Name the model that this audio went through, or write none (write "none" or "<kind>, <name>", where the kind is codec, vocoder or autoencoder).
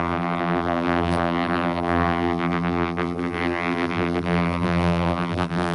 vocoder, BigVGAN v2